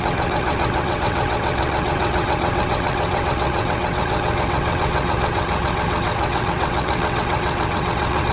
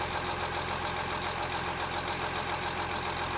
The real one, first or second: second